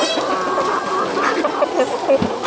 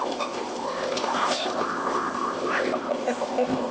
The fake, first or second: second